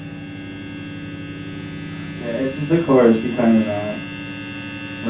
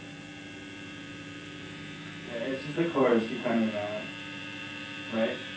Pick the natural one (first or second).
first